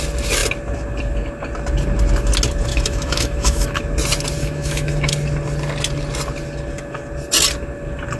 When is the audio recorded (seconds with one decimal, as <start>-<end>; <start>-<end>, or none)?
0.0-2.7; 3.8-4.4; 5.1-8.2